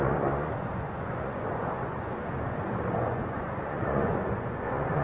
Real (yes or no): no